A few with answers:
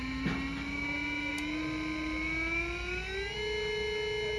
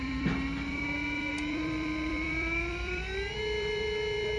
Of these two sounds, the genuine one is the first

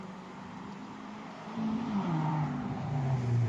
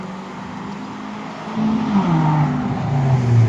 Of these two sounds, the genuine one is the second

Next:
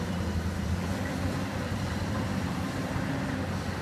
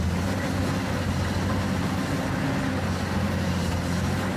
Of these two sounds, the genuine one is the second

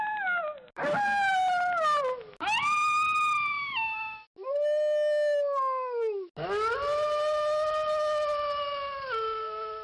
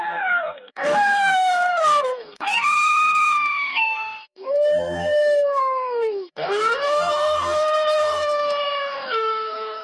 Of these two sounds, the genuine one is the first